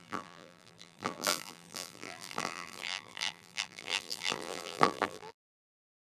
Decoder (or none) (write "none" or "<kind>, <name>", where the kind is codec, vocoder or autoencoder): vocoder, BigVGAN v2